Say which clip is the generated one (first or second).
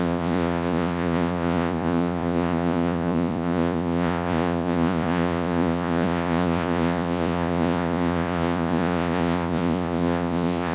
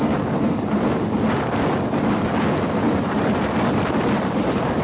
first